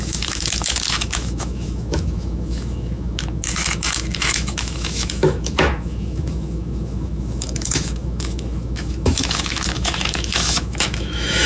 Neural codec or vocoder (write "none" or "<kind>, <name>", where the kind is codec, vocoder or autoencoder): autoencoder, DAC-VAE